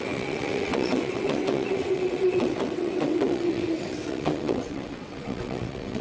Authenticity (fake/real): fake